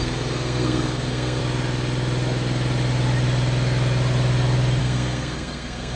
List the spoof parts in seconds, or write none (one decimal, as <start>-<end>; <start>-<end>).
0.0-1.4; 4.8-6.0